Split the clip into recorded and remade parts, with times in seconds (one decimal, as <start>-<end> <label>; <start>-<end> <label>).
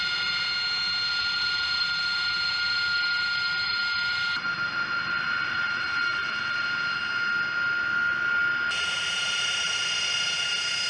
0.0-0.5 remade; 0.5-1.1 recorded; 1.1-7.0 remade; 7.0-10.9 recorded